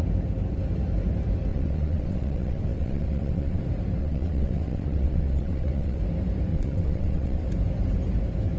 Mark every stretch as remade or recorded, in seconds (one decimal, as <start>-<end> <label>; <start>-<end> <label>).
0.0-1.5 recorded; 1.5-3.6 remade; 3.6-4.0 recorded; 4.0-6.0 remade; 6.0-6.5 recorded; 6.5-7.5 remade; 7.5-8.6 recorded